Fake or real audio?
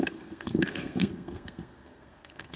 fake